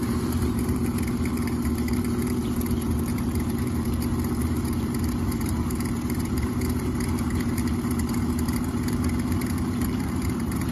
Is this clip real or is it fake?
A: fake